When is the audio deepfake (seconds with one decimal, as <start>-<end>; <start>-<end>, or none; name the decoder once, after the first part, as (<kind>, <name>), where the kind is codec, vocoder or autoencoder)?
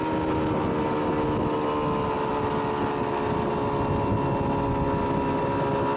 none